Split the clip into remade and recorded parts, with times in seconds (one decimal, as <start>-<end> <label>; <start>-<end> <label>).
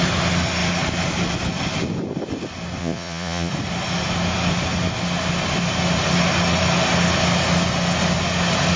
0.0-2.8 recorded; 2.8-3.5 remade; 3.5-8.8 recorded